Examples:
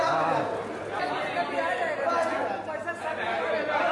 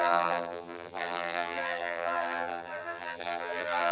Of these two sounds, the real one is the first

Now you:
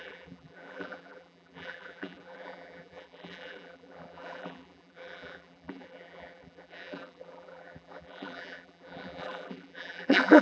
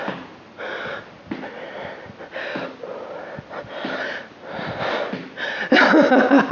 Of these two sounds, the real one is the second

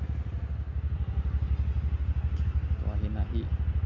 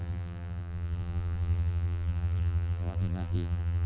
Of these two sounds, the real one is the first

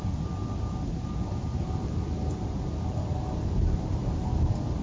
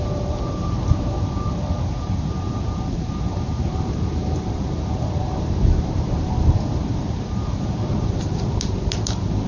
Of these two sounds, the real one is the first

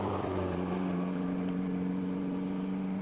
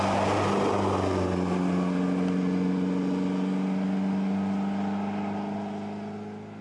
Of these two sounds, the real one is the second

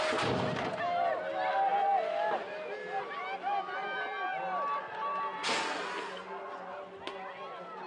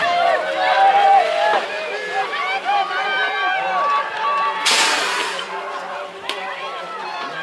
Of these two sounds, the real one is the first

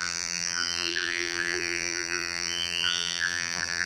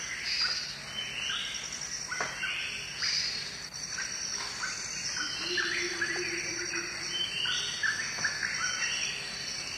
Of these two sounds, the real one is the second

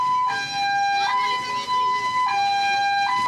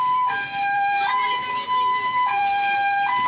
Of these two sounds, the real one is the first